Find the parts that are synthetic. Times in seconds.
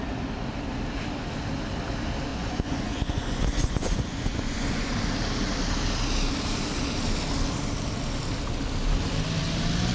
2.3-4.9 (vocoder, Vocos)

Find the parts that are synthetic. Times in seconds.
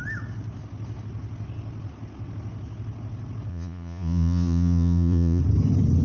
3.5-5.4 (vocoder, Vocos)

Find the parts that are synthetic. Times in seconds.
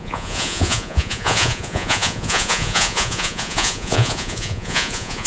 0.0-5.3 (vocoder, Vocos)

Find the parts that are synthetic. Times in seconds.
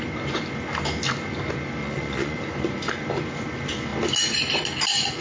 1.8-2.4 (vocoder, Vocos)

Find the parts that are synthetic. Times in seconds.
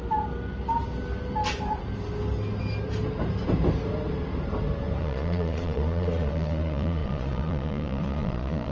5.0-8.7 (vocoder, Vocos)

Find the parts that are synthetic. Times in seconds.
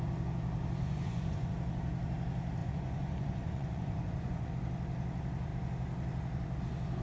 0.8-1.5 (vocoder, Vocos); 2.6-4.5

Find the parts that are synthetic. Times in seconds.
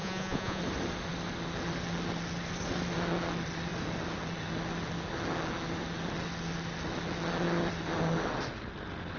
0.0-0.6 (vocoder, Vocos)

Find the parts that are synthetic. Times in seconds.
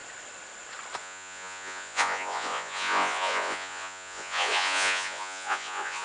1.0-6.0 (vocoder, Vocos)